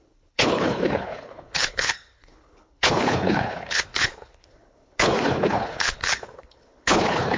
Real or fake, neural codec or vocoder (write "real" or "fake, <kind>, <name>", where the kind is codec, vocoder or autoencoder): fake, codec, HILCodec